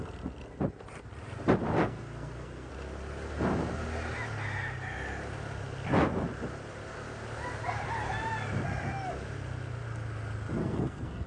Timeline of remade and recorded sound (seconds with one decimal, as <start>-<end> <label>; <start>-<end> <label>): 0.0-1.8 recorded; 1.8-2.7 remade; 2.7-10.6 recorded; 10.6-11.3 remade